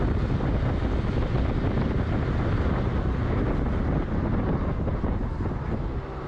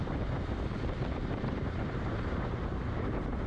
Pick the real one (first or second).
first